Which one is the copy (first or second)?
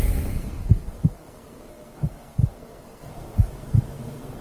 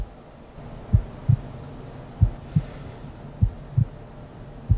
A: first